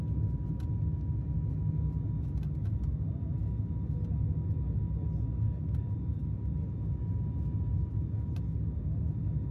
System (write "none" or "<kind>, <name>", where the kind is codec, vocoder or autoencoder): none